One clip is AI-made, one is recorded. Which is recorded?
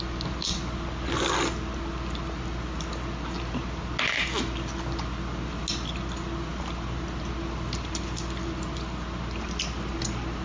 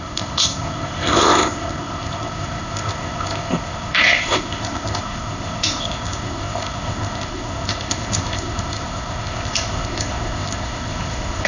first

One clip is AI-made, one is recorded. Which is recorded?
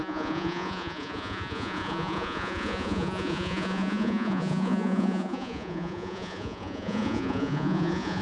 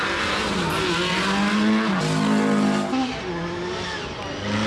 second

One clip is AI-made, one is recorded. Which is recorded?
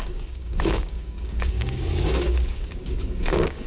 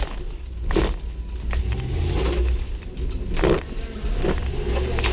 second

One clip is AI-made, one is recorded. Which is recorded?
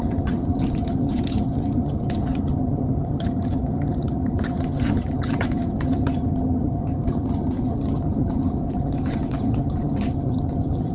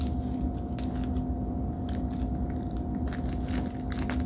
second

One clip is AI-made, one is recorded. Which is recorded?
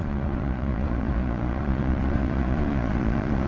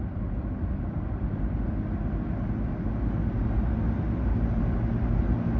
second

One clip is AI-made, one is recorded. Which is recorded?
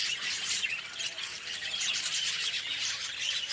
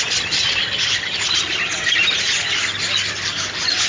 second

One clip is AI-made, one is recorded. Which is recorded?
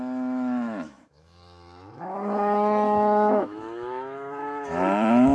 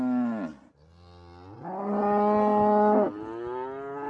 second